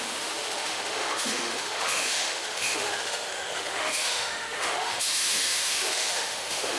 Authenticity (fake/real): fake